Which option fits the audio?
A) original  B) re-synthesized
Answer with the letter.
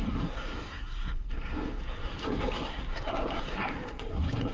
B